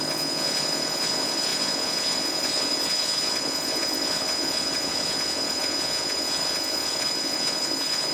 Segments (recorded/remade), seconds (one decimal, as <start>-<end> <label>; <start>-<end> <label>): 0.0-8.1 remade

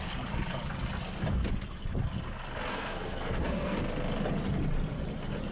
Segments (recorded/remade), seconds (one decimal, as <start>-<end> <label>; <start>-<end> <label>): 0.0-2.7 recorded; 2.7-3.8 remade; 3.8-5.5 recorded

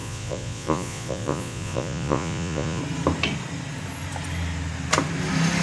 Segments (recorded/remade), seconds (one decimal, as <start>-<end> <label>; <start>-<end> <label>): 0.0-2.8 remade; 2.8-5.6 recorded